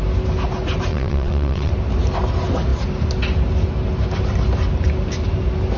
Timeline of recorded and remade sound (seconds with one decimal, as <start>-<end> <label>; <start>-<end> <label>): 0.0-0.9 recorded; 0.9-1.7 remade; 1.7-5.8 recorded